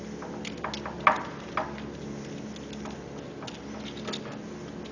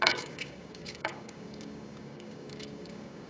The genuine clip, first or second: first